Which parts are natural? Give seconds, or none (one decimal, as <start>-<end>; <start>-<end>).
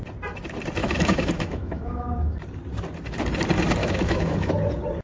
0.0-0.8; 2.4-3.8; 4.5-5.0